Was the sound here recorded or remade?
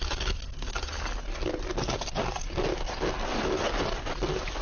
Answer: recorded